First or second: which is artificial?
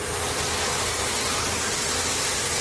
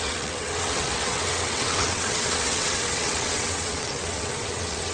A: second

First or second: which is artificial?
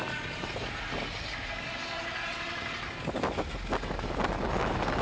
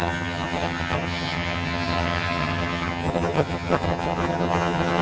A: second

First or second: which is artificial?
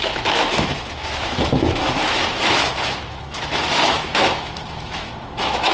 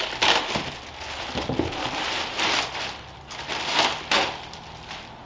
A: first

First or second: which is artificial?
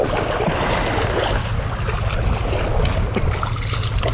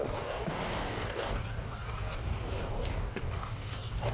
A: second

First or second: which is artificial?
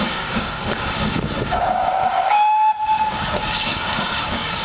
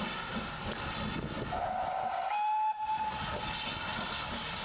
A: first